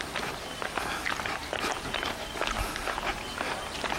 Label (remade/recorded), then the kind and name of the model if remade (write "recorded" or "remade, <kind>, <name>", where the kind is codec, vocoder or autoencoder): recorded